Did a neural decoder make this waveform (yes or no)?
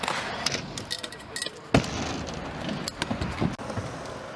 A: no